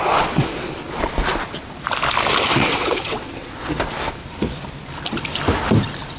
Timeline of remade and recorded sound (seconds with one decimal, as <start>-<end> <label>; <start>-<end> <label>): 0.0-2.5 recorded; 2.5-3.8 remade; 3.8-6.2 recorded